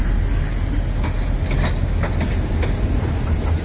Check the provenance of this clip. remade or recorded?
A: recorded